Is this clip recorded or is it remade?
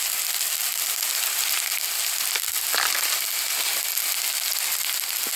recorded